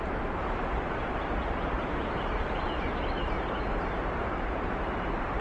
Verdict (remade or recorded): remade